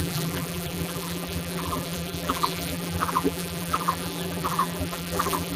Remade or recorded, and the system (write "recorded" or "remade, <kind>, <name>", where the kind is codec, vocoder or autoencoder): remade, vocoder, BigVGAN v2